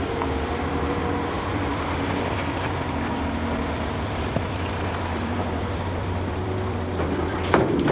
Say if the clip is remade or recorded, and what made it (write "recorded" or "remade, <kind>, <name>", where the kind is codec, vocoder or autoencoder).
remade, vocoder, BigVGAN v2